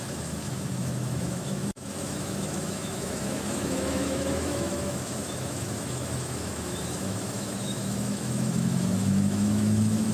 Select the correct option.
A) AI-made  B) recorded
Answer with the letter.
A